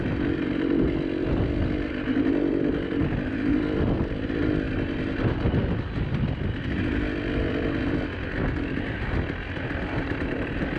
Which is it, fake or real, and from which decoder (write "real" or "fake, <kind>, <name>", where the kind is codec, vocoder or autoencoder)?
real